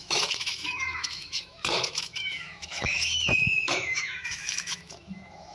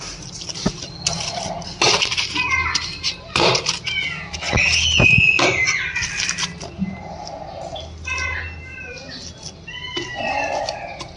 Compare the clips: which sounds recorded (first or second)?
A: second